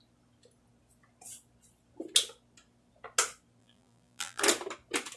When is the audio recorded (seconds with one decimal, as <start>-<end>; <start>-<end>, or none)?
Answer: 0.0-3.6; 4.4-5.2